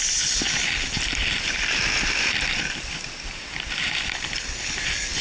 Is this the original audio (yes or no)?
yes